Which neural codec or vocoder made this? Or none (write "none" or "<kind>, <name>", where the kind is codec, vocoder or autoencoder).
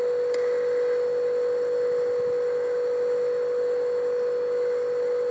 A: none